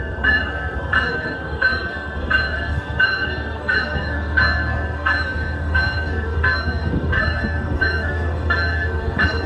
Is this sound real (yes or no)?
no